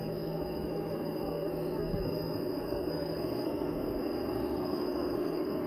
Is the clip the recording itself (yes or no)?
no